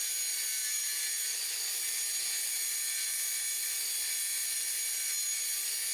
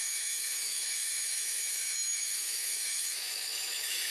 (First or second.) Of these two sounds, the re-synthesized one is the second